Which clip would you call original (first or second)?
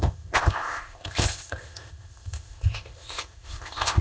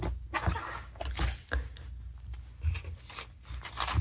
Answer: second